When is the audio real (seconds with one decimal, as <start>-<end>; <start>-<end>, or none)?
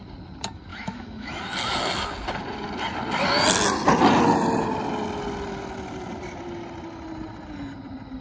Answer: 0.0-0.7; 1.4-8.2